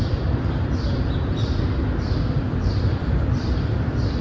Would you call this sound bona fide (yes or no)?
no